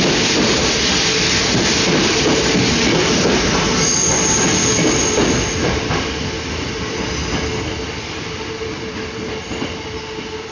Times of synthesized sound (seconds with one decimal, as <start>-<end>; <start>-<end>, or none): none